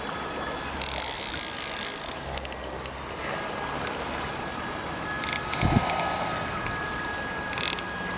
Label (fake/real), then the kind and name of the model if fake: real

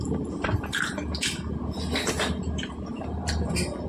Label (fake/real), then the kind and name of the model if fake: real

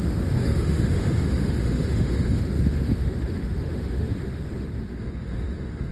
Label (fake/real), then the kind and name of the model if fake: fake, autoencoder, DAC-VAE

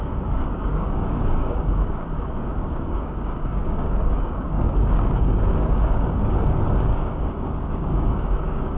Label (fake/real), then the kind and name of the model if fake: fake, codec, DAC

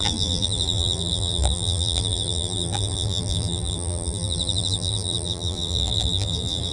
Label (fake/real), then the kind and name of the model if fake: fake, vocoder, BigVGAN v2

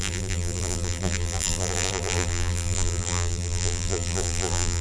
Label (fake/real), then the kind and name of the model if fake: fake, vocoder, BigVGAN v2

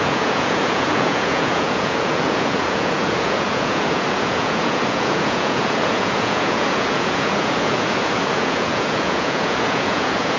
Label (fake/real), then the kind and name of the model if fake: fake, vocoder, Vocos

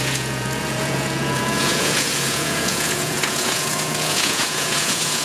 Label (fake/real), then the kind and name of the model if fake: fake, vocoder, Vocos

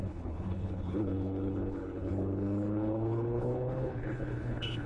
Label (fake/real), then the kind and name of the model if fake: fake, codec, HILCodec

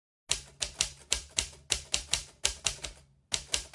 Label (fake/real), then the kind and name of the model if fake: real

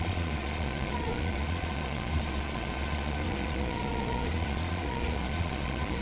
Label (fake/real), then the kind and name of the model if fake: fake, vocoder, Vocos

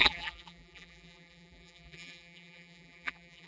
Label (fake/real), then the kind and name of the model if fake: fake, vocoder, BigVGAN v2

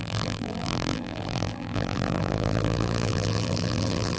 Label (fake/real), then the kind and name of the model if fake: fake, vocoder, BigVGAN v2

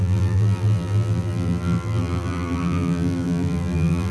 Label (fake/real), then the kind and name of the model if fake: fake, vocoder, BigVGAN v2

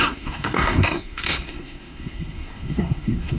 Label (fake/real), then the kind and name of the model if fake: fake, codec, SNAC